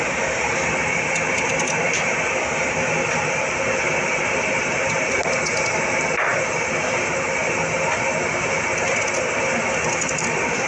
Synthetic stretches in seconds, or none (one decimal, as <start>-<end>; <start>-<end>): none